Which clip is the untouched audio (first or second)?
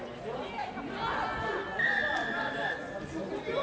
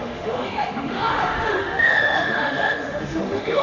first